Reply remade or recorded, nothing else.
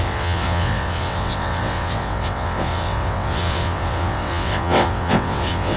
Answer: remade